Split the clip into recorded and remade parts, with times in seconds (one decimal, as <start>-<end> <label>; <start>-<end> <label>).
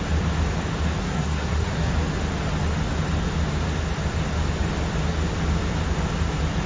0.0-1.0 recorded; 1.0-1.9 remade; 1.9-6.7 recorded